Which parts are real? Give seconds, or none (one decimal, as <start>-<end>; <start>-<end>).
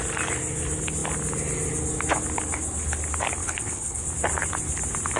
0.0-3.4; 4.0-5.2